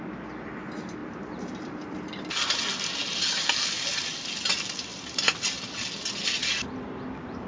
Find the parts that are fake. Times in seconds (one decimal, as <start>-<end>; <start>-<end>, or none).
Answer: 1.0-2.3; 4.9-5.6; 6.4-7.5